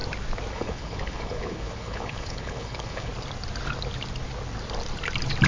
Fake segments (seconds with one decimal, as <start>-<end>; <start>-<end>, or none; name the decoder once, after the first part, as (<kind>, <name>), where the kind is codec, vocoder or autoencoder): 0.5-3.1 (codec, HILCodec)

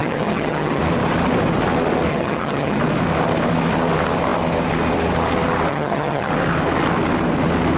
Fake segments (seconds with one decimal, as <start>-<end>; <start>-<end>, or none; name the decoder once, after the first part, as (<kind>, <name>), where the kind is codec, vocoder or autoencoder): 0.0-0.8 (vocoder, HiFi-GAN); 2.1-2.8; 5.7-6.3

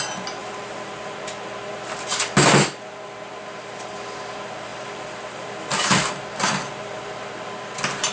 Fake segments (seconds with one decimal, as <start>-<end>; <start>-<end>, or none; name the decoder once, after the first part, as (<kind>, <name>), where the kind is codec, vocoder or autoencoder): 4.7-6.1 (vocoder, BigVGAN v2)

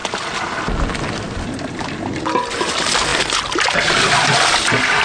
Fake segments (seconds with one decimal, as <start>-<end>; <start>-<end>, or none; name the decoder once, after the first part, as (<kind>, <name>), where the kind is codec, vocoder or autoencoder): none

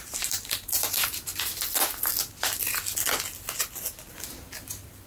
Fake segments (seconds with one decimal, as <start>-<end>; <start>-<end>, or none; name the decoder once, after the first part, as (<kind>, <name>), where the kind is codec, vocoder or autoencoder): 0.0-1.3 (vocoder, BigVGAN v2); 4.1-5.1

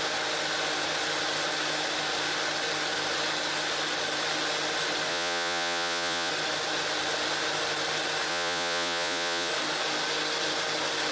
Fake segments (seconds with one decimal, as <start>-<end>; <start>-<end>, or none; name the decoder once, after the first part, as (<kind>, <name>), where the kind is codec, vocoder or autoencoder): 5.1-6.3 (vocoder, Vocos); 8.3-9.5

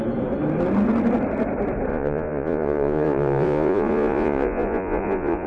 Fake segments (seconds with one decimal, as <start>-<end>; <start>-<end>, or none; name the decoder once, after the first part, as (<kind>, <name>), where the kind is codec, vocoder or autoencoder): 1.9-5.5 (vocoder, Vocos)

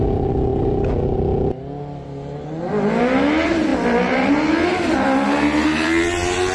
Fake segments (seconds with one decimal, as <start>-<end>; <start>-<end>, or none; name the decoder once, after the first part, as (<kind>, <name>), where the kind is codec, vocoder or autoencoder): none